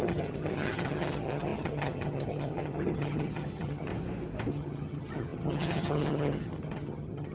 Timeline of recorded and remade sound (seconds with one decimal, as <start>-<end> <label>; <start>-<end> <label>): 0.0-3.9 remade; 3.9-4.5 recorded; 4.5-7.3 remade